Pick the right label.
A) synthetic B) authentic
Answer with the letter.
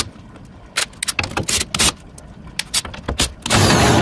B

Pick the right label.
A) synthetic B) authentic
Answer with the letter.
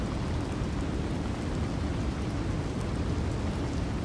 B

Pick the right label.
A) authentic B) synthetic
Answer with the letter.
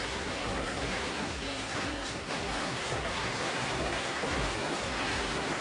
B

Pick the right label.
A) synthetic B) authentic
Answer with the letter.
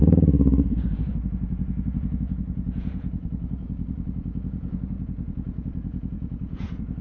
A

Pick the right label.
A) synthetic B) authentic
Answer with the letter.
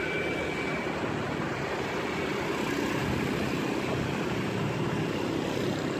B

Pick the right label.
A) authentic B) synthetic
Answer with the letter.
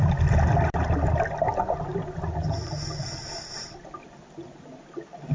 A